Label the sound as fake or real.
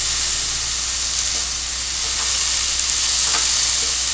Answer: real